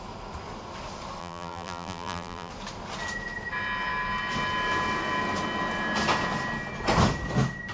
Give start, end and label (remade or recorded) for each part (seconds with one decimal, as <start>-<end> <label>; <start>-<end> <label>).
0.0-1.2 recorded; 1.2-2.5 remade; 2.5-7.7 recorded